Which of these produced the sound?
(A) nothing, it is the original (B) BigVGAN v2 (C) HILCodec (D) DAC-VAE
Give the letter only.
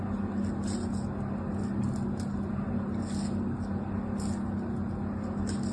A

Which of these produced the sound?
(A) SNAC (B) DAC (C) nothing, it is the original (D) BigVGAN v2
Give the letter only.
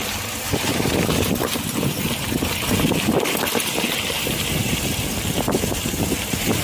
C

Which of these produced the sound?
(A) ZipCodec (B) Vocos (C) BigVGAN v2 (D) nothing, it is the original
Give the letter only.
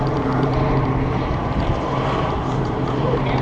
C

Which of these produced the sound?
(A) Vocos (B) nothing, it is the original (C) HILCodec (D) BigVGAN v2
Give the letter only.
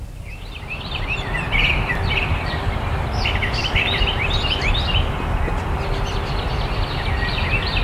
D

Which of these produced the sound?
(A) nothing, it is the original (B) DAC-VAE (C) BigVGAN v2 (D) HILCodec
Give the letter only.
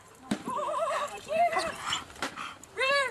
C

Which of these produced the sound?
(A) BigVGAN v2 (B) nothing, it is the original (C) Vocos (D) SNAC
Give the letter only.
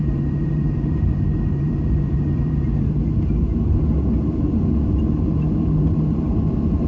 A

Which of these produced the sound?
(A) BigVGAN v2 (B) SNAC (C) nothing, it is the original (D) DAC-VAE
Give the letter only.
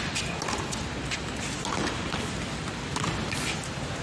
C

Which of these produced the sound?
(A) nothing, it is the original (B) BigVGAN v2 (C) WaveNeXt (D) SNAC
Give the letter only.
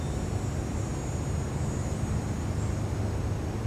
A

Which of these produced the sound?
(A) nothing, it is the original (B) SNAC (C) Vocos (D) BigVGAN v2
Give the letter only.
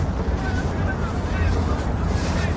D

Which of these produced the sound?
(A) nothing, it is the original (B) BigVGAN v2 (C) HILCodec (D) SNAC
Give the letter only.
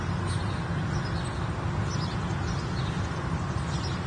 A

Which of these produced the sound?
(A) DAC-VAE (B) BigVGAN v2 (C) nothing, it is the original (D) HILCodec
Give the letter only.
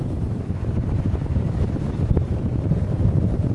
B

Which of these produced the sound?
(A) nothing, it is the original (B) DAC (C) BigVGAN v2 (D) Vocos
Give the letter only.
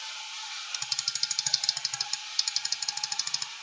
C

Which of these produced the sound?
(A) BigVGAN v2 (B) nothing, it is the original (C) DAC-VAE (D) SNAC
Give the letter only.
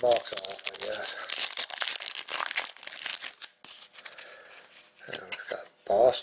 B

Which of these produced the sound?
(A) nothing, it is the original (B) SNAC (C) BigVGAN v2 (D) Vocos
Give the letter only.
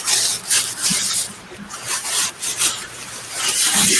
C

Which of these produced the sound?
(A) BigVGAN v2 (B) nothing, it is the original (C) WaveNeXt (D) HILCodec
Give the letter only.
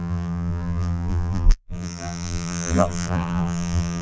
A